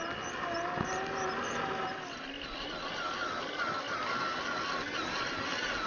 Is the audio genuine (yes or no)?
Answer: yes